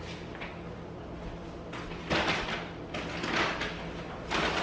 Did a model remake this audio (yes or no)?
no